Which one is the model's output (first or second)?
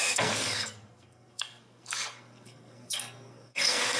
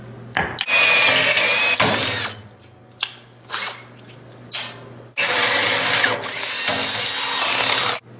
first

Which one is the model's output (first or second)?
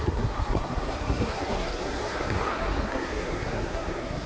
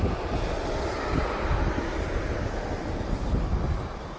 first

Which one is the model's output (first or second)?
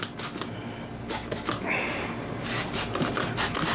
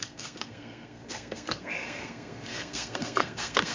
second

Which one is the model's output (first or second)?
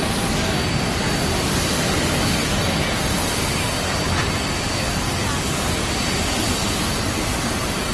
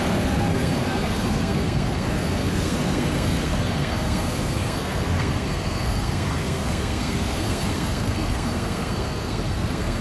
second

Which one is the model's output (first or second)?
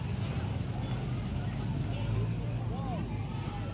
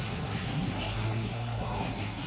second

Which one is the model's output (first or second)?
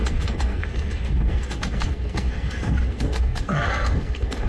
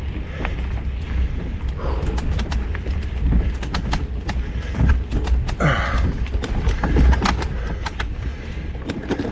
first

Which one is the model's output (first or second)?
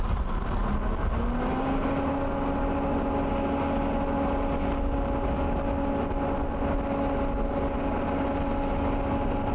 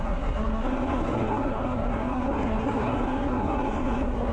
second